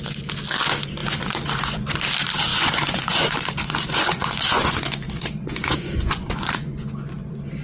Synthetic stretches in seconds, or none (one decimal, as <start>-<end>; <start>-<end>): 1.0-2.0; 2.5-7.1